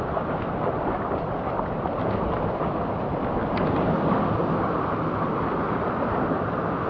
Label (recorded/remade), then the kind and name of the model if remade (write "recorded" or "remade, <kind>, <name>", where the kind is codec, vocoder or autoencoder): recorded